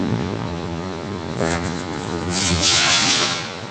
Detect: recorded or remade remade